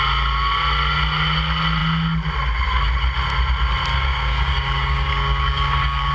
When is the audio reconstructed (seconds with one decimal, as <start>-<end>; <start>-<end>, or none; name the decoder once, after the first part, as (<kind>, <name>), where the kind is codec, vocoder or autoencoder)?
3.9-6.1 (codec, DAC)